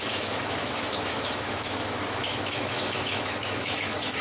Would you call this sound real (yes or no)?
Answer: no